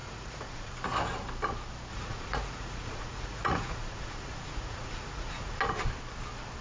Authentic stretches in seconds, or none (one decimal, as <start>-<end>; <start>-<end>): 0.7-1.9; 5.6-6.6